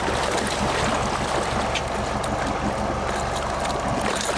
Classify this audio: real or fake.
real